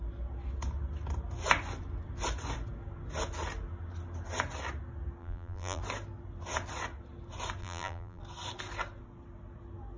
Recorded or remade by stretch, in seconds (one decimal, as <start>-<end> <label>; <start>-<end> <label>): 0.0-5.2 recorded; 5.2-5.8 remade; 5.8-7.6 recorded; 7.6-8.2 remade; 8.2-10.0 recorded